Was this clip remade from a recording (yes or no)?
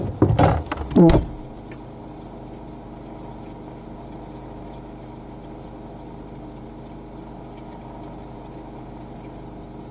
no